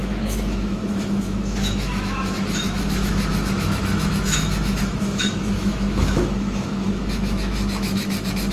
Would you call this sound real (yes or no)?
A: no